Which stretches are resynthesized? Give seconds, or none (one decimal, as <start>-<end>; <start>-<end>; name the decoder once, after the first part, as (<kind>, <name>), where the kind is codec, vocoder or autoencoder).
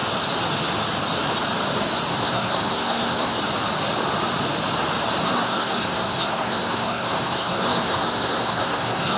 2.1-3.4 (codec, SNAC); 5.2-9.2